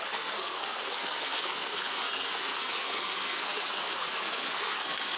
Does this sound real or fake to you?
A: fake